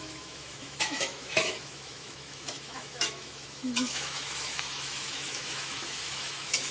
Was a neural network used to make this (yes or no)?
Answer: yes